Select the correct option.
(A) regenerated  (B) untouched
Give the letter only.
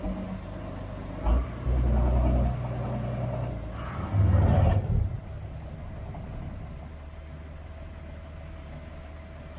B